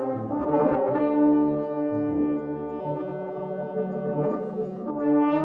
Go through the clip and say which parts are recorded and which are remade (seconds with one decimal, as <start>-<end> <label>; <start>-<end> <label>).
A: 0.0-0.4 recorded; 0.4-1.0 remade; 1.0-2.8 recorded; 2.8-4.9 remade; 4.9-5.4 recorded